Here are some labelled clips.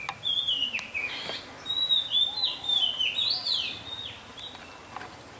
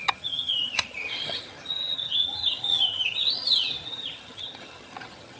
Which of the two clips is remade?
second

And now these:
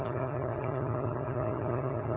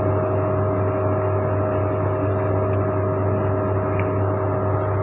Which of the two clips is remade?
first